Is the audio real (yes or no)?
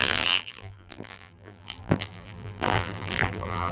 no